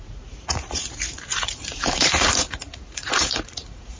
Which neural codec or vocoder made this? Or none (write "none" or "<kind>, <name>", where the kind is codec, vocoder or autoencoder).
vocoder, Vocos